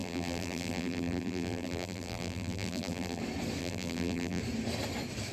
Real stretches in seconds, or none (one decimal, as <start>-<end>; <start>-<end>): 3.2-3.6; 4.4-5.3